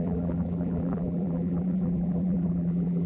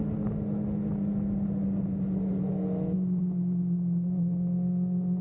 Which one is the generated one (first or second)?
first